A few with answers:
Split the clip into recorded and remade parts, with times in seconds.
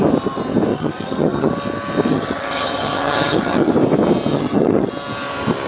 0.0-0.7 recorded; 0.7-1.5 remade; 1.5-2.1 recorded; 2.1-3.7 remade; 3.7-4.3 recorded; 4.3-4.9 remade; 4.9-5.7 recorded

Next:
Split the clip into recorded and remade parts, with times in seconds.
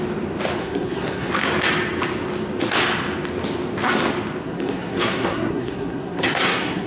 0.0-0.6 recorded; 0.6-1.3 remade; 1.3-4.4 recorded; 4.4-6.9 remade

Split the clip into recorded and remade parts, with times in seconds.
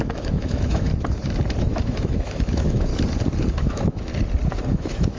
0.0-0.9 remade; 0.9-1.6 recorded; 1.6-2.9 remade; 2.9-3.5 recorded; 3.5-4.1 remade; 4.1-4.7 recorded; 4.7-5.2 remade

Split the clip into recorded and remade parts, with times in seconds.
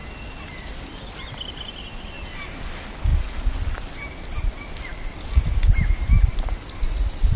0.0-1.7 remade; 1.7-3.1 recorded; 3.1-4.5 remade; 4.5-7.4 recorded